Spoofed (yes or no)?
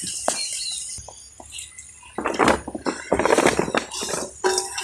no